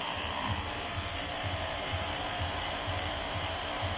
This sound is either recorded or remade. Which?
remade